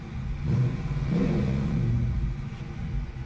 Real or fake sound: fake